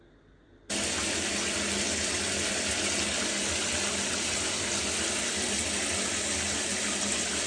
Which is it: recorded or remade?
recorded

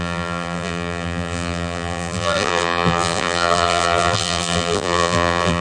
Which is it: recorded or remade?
remade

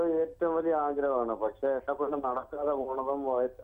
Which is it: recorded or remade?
recorded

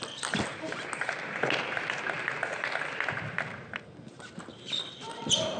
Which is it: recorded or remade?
recorded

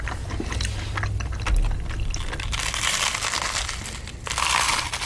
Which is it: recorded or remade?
recorded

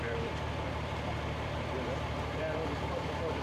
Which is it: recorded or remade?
remade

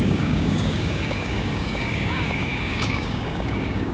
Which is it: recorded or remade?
remade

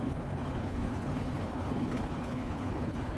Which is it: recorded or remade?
remade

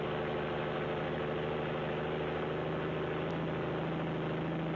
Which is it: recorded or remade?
recorded